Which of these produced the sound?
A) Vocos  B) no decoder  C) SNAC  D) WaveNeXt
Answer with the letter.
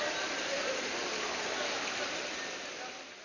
B